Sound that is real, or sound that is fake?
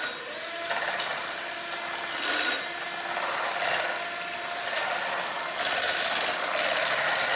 real